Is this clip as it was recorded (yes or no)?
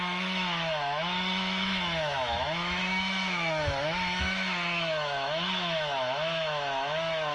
no